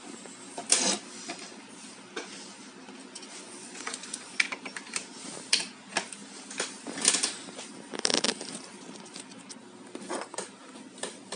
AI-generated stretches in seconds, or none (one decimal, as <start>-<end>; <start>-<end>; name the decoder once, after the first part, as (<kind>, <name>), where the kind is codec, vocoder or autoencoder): 3.0-4.5 (vocoder, Vocos)